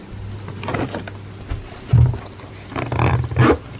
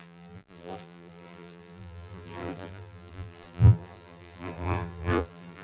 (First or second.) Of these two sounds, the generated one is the second